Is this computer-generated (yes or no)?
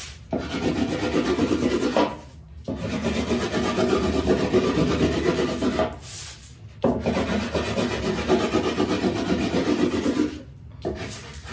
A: no